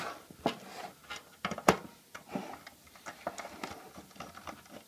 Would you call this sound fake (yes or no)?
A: no